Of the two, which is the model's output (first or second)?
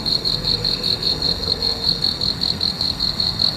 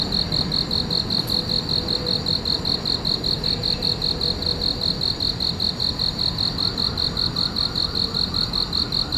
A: first